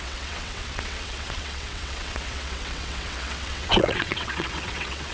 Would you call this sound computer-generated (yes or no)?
yes